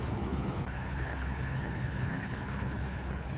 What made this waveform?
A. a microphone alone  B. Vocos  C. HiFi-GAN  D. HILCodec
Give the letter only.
D